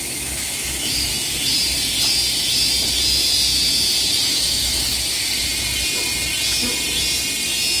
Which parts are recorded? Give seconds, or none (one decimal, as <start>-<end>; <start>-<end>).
1.1-4.3; 4.9-7.8